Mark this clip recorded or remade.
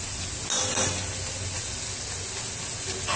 recorded